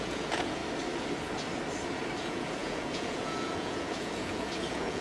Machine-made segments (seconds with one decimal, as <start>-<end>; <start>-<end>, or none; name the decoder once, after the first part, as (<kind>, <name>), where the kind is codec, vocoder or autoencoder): 0.0-0.6 (vocoder, Vocos); 2.2-5.0